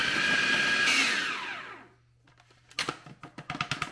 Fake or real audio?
real